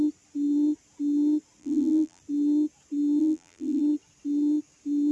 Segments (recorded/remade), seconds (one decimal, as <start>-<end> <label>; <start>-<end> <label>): 0.0-1.6 recorded; 1.6-2.2 remade; 2.2-3.2 recorded; 3.2-3.8 remade; 3.8-5.1 recorded